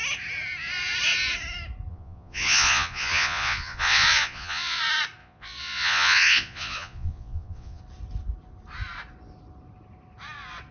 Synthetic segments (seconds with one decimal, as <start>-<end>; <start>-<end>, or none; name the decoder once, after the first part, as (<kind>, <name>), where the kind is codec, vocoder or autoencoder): 1.9-4.8 (vocoder, Vocos); 5.2-7.8